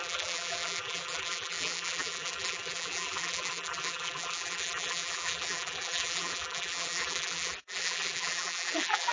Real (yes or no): no